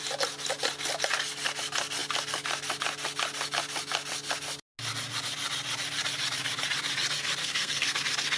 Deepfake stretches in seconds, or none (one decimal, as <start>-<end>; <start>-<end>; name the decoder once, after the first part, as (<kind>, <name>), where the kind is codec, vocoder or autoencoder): 7.4-8.0 (codec, SNAC)